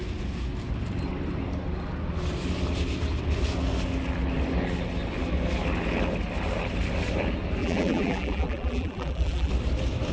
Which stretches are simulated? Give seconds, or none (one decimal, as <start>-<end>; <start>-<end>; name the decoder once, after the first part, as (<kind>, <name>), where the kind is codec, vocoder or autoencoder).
7.6-9.5 (vocoder, BigVGAN v2)